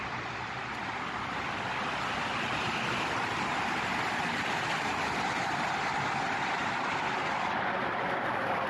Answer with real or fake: real